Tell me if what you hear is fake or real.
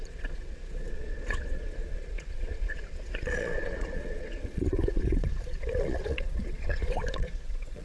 fake